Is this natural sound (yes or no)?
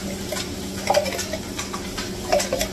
yes